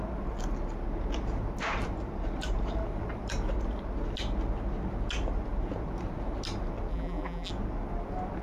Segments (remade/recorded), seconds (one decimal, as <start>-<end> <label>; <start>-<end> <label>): 0.0-6.9 recorded; 6.9-7.5 remade; 7.5-8.4 recorded